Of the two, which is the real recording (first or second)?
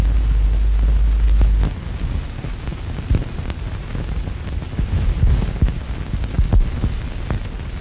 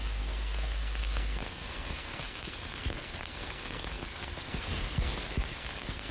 first